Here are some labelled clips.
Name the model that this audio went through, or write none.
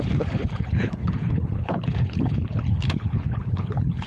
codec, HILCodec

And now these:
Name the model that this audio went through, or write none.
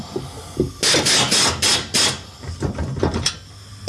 none